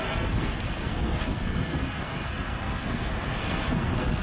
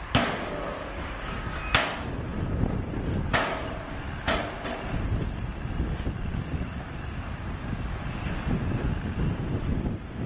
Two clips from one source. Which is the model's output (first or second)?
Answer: first